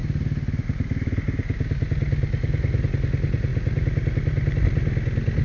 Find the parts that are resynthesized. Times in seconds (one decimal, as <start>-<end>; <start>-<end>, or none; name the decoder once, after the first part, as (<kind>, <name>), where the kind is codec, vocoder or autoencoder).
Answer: none